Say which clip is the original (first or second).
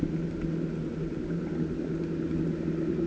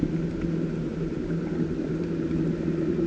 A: first